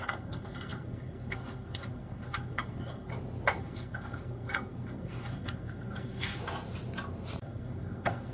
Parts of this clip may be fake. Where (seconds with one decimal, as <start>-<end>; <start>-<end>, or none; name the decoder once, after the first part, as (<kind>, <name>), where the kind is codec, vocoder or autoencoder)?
0.0-3.1 (codec, SNAC); 3.6-6.4; 7.4-8.3